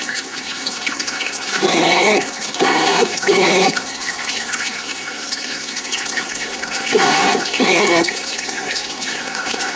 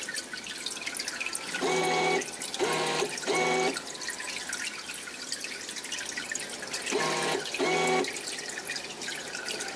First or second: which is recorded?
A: second